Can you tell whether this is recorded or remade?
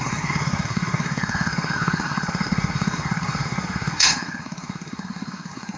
remade